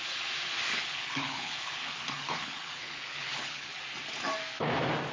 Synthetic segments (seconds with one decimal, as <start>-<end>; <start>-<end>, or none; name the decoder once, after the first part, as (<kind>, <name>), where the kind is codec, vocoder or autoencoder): 0.7-3.8 (codec, HILCodec)